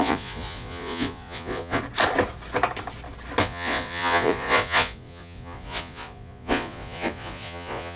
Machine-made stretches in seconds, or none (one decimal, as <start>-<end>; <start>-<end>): 0.0-1.8; 3.4-8.0